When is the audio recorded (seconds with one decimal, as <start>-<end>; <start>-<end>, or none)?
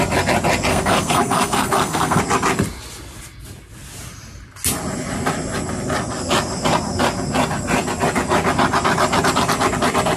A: 0.0-0.7; 2.2-10.2